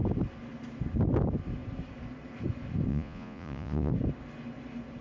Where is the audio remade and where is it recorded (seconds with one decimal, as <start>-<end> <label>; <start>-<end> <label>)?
0.0-2.9 recorded; 2.9-3.9 remade; 3.9-5.0 recorded